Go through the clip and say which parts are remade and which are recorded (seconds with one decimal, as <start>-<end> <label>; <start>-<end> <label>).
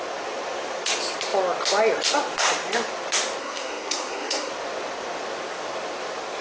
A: 0.0-3.4 recorded; 3.4-4.5 remade; 4.5-6.4 recorded